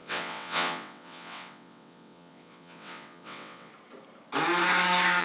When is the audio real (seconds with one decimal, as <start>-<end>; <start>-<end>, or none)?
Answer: 3.7-5.2